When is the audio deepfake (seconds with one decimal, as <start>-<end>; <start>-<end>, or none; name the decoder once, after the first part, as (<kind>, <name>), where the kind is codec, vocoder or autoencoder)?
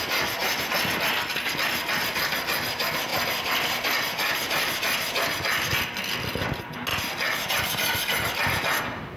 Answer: none